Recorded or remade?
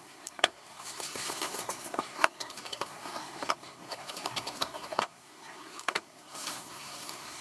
remade